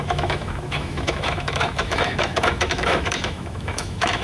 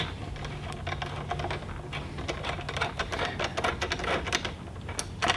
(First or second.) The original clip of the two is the second